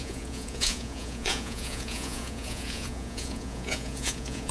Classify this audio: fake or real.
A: fake